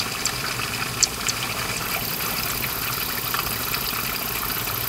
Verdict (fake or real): real